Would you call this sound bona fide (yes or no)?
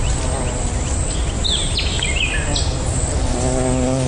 yes